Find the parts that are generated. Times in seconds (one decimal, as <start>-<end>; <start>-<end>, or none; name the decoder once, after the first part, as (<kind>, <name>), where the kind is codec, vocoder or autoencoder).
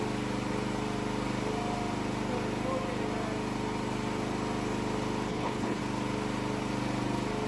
5.3-5.8 (codec, HILCodec)